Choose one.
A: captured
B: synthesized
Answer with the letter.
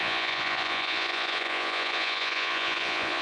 B